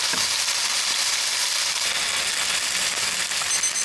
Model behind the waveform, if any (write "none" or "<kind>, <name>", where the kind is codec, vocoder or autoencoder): none